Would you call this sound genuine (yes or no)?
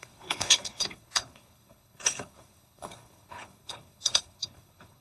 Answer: no